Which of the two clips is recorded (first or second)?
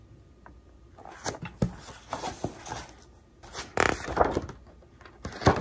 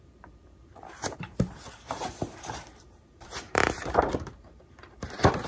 first